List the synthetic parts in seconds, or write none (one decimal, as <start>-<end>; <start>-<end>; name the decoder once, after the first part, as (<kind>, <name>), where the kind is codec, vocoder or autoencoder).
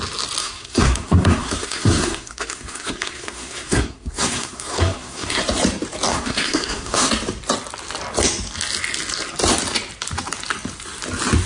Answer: 0.4-5.4 (codec, SNAC); 6.1-7.1